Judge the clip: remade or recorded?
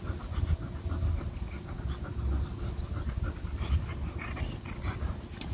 recorded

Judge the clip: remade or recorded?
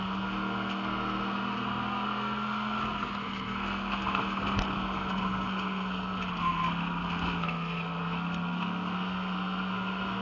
remade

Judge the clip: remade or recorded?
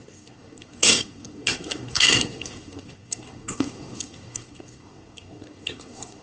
remade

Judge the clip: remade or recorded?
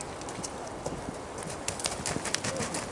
recorded